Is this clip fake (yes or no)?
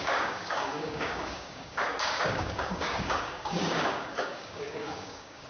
yes